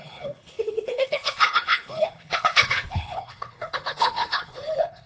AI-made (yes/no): yes